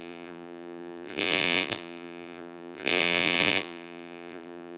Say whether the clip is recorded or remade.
remade